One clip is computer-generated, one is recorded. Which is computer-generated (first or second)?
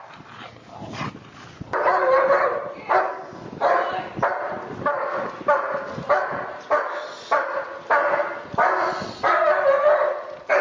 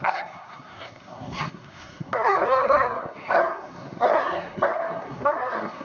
second